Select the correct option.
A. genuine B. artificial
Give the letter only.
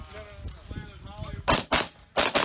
A